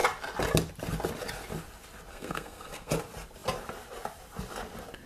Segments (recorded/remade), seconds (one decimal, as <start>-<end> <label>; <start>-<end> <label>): 0.0-2.1 recorded; 2.1-2.9 remade; 2.9-5.1 recorded